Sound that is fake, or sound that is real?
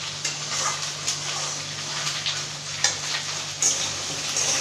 real